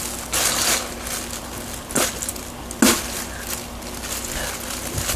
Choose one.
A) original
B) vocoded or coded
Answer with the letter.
A